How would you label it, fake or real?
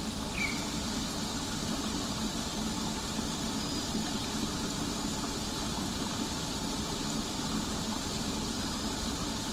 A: real